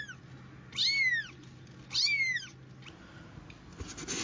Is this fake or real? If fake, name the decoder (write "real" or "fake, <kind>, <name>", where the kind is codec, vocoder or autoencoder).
real